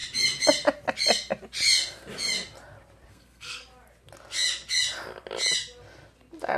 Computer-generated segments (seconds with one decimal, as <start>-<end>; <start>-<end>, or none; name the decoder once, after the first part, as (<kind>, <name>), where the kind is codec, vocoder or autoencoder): 3.1-3.6 (codec, SNAC)